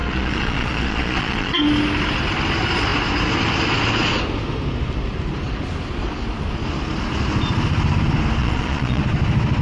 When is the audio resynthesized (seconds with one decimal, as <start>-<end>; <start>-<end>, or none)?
0.0-1.5; 8.4-9.0